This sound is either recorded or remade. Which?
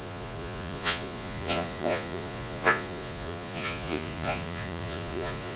remade